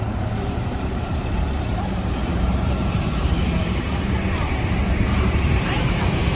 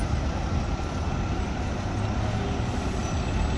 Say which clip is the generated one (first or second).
first